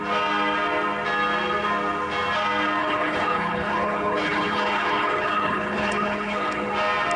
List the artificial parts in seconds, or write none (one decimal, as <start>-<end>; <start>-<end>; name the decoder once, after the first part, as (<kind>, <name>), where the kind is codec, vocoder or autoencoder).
2.8-6.7 (codec, HILCodec)